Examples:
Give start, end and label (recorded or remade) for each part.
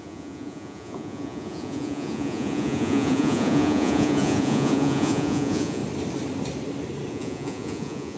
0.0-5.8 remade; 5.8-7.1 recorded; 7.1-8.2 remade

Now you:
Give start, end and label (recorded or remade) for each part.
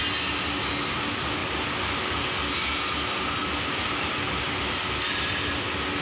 0.0-6.0 recorded